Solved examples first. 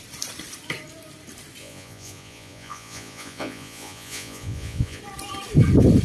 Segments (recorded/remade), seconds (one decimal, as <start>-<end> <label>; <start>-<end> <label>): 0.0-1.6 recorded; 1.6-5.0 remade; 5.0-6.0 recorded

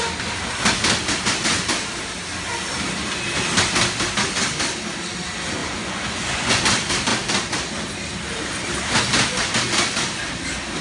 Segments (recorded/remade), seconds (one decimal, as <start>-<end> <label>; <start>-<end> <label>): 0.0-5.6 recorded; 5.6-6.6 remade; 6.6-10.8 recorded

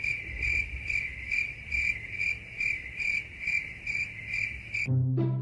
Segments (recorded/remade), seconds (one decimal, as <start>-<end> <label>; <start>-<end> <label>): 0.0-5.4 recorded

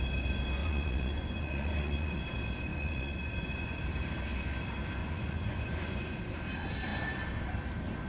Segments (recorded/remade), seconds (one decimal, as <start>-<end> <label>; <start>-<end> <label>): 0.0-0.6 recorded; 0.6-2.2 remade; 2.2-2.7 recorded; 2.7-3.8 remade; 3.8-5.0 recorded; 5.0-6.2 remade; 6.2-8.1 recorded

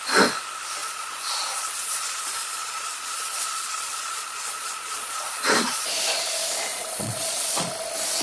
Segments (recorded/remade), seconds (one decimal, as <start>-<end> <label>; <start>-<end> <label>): 0.0-0.8 recorded; 0.8-2.2 remade; 2.2-2.6 recorded; 2.6-5.9 remade; 5.9-6.7 recorded; 6.7-7.7 remade; 7.7-8.2 recorded

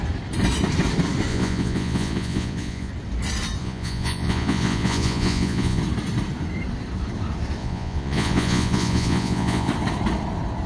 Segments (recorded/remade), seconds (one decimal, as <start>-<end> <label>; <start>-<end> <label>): 0.0-1.3 recorded; 1.3-2.9 remade; 2.9-3.6 recorded; 3.6-5.8 remade; 5.8-7.6 recorded; 7.6-9.7 remade; 9.7-10.7 recorded

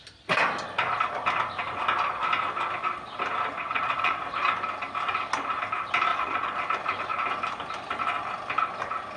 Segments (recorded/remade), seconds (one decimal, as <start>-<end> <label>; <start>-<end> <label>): 0.0-3.6 recorded; 3.6-4.2 remade; 4.2-6.1 recorded; 6.1-6.6 remade; 6.6-9.2 recorded

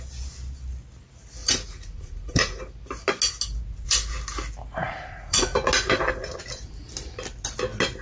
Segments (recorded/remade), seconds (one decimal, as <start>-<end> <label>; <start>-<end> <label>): 0.0-1.4 recorded; 1.4-2.6 remade; 2.6-4.8 recorded; 4.8-5.7 remade; 5.7-8.0 recorded